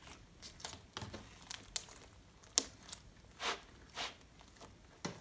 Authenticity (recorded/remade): recorded